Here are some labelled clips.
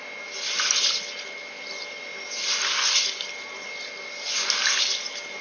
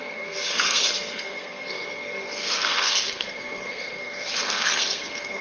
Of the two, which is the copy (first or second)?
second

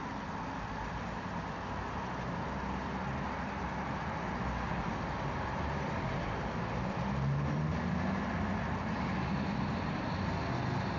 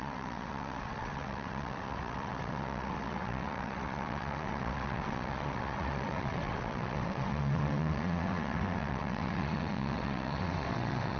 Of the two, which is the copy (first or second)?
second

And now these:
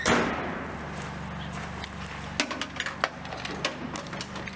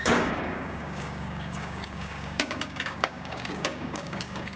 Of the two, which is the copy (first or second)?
second